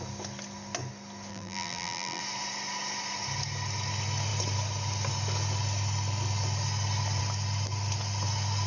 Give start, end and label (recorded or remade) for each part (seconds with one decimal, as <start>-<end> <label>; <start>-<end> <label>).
0.0-1.3 recorded; 1.3-2.2 remade; 2.2-8.7 recorded